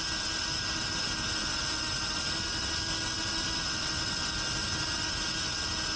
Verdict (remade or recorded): recorded